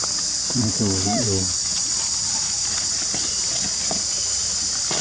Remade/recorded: recorded